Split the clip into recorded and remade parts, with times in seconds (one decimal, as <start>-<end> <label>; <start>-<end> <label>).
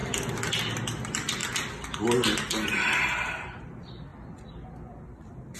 0.0-5.6 recorded